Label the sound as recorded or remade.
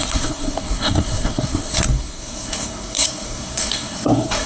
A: remade